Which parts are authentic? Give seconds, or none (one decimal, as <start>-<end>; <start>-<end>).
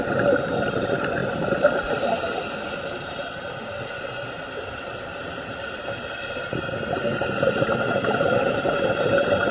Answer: 0.0-9.5